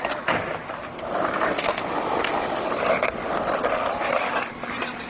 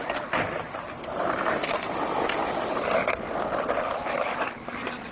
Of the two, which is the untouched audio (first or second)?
first